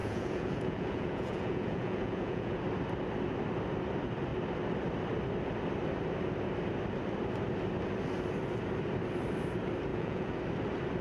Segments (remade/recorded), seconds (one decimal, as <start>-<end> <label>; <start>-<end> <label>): 0.0-2.6 remade; 2.6-9.9 recorded; 9.9-10.4 remade; 10.4-11.0 recorded